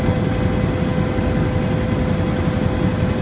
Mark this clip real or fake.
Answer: real